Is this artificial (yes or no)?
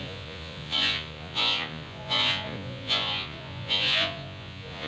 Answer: yes